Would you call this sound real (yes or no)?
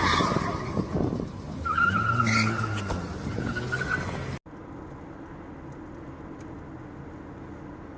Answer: yes